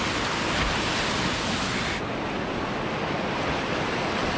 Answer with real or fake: real